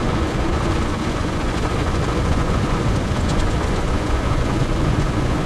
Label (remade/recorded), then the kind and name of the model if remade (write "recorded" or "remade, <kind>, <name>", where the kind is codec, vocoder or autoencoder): remade, vocoder, Vocos